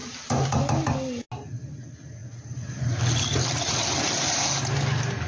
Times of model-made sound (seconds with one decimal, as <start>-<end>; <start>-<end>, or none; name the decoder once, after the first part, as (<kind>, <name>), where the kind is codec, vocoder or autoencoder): none